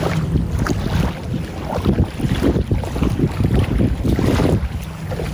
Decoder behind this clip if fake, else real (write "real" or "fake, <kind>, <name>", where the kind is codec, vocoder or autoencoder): real